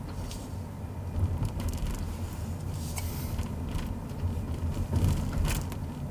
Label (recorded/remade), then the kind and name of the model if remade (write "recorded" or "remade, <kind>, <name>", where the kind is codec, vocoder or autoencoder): recorded